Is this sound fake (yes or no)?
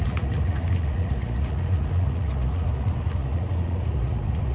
yes